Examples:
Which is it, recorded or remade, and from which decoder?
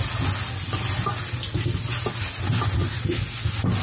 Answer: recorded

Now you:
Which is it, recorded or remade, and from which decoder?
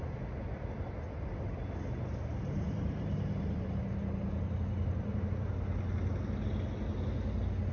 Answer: recorded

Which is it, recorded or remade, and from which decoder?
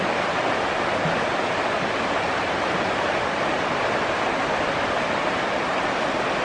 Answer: recorded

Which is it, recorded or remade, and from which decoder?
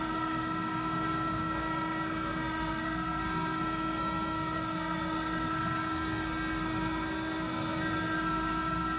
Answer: remade, codec, SNAC